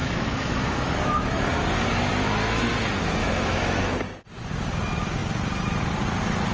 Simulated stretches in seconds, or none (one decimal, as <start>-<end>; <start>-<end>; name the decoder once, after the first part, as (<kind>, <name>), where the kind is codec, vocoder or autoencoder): 0.0-1.5 (autoencoder, DAC-VAE); 3.2-3.8